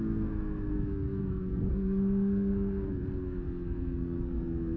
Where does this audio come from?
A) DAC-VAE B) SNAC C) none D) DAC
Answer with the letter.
B